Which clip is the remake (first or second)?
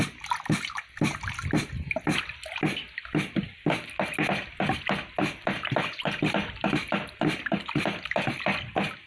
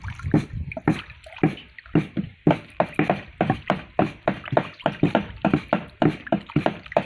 second